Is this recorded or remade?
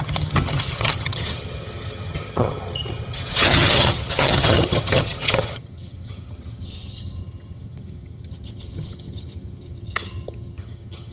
remade